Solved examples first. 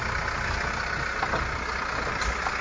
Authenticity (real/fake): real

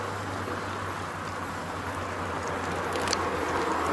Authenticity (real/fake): real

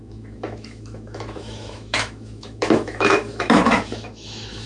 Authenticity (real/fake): fake